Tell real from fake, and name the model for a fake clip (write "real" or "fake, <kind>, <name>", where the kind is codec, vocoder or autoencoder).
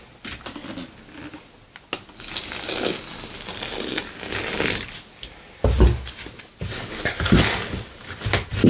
real